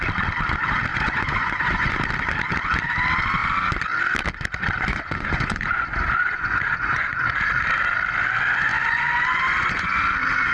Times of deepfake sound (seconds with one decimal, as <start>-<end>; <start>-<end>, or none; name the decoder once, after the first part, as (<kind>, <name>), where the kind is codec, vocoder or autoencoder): 0.9-2.0 (vocoder, Vocos); 4.9-7.3; 8.7-10.0